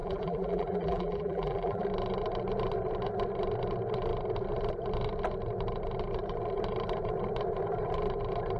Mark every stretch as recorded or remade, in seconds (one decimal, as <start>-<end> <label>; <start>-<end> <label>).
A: 0.0-1.8 remade; 1.8-8.6 recorded